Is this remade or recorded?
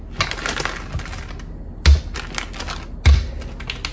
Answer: recorded